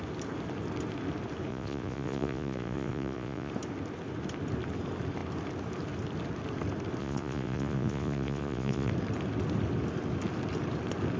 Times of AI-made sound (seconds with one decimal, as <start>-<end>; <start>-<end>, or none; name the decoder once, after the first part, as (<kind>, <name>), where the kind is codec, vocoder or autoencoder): 1.5-3.5 (vocoder, Vocos); 7.0-8.9